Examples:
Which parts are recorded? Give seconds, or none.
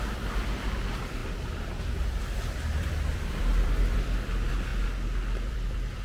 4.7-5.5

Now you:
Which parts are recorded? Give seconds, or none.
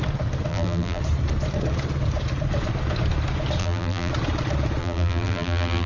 0.0-0.5; 1.0-3.6; 4.1-4.8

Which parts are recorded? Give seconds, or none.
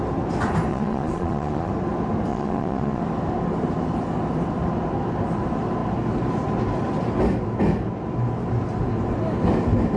0.0-0.7; 1.7-2.3; 3.0-10.0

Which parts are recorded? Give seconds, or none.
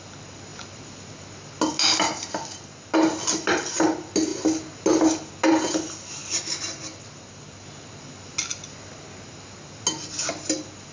0.0-10.9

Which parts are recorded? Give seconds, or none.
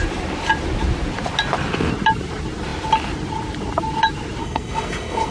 0.0-4.4